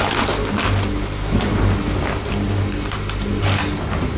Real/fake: real